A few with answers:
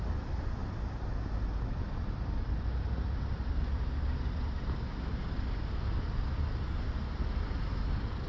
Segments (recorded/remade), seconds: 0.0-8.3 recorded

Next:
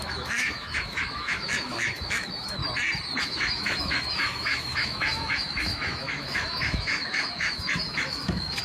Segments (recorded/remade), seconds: 0.0-2.6 remade; 2.6-3.2 recorded; 3.2-8.6 remade

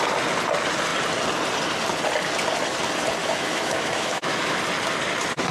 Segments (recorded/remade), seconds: 0.0-3.2 recorded; 3.2-4.6 remade; 4.6-5.5 recorded

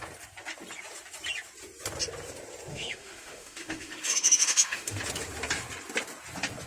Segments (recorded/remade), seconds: 0.0-2.7 recorded; 2.7-5.0 remade; 5.0-6.7 recorded

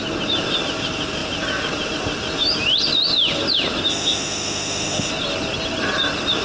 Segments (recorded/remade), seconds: 0.0-3.9 recorded; 3.9-5.1 remade; 5.1-6.4 recorded

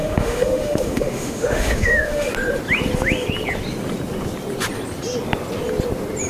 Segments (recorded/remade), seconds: 0.0-2.3 remade; 2.3-6.3 recorded